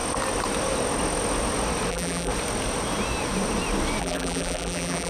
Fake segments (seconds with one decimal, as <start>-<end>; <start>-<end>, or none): 1.9-2.3; 4.0-5.1

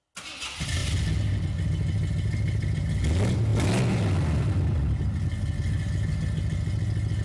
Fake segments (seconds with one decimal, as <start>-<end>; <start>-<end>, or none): none

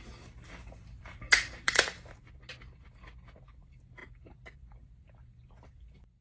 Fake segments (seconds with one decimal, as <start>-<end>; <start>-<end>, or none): 1.4-2.3

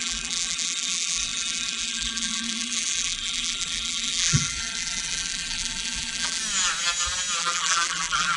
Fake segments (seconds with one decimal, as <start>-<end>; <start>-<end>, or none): 0.0-6.4; 7.4-8.4

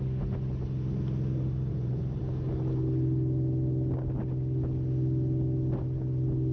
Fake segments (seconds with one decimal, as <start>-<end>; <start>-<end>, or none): 1.7-2.2

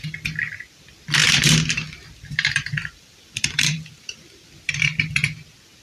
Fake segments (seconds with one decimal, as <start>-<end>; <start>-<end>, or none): 1.2-4.7

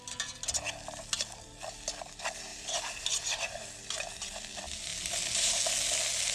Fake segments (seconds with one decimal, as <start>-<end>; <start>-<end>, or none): 2.5-3.6; 4.9-5.6

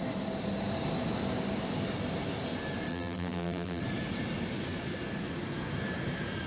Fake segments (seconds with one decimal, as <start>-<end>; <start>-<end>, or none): 2.9-3.8